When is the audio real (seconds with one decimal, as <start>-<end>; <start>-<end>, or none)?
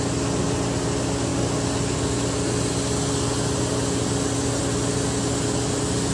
0.0-6.1